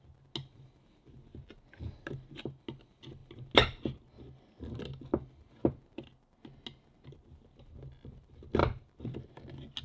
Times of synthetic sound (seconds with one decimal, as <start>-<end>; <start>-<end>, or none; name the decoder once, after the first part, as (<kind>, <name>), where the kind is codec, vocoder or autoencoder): none